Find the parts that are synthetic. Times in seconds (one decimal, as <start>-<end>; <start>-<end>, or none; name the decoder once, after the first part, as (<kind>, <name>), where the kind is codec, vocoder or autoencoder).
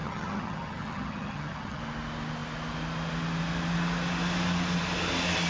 0.0-1.8 (vocoder, HiFi-GAN)